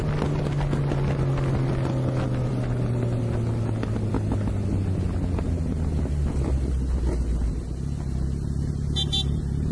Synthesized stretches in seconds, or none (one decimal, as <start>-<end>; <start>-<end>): none